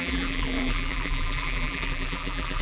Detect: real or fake fake